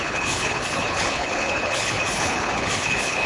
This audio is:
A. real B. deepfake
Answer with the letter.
B